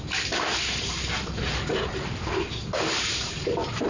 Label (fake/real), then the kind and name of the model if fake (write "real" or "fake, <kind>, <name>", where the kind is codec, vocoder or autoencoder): real